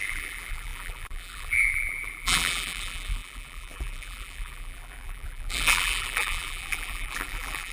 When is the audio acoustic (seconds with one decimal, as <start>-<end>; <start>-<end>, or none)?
none